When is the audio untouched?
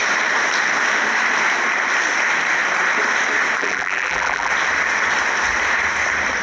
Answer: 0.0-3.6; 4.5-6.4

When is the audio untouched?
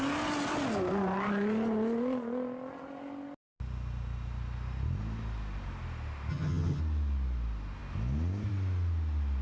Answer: 0.0-6.3; 6.8-9.4